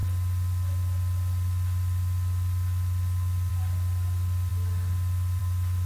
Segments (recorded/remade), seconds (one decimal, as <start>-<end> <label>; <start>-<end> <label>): 0.0-5.9 recorded